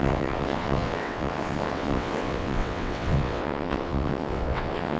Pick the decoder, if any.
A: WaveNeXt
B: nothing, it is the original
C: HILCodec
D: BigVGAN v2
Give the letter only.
A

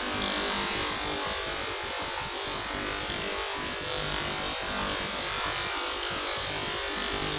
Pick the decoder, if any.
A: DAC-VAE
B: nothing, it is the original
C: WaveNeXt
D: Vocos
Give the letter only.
B